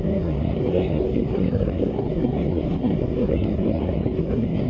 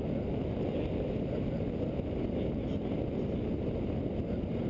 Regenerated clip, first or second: first